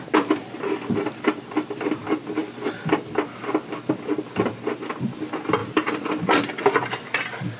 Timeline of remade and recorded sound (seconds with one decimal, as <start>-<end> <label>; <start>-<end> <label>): 0.0-0.4 recorded; 0.4-2.0 remade; 2.0-2.4 recorded; 2.4-2.9 remade; 2.9-5.6 recorded; 5.6-6.1 remade; 6.1-7.6 recorded